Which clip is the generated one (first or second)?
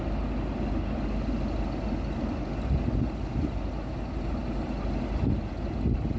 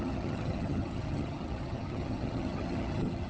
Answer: second